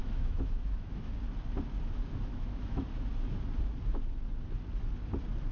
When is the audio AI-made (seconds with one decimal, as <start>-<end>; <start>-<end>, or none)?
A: 0.0-1.1; 2.3-2.9